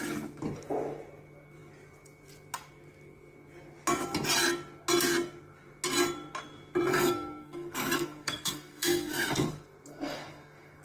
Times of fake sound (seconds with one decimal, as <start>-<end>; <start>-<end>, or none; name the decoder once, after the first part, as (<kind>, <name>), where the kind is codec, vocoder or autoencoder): 6.9-9.5 (codec, SNAC); 9.9-10.8